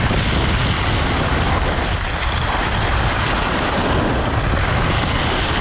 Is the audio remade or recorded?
recorded